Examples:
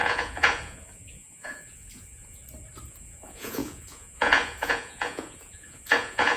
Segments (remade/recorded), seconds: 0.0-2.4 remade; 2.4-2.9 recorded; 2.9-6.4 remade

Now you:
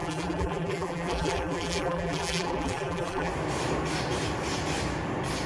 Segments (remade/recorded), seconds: 0.0-3.3 remade; 3.3-5.5 recorded